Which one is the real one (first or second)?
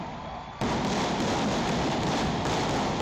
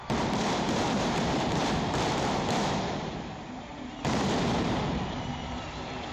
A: first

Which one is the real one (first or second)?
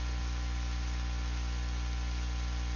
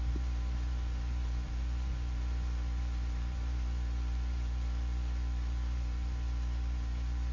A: first